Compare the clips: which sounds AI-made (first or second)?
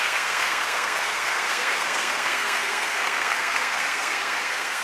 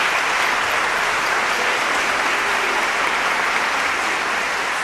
first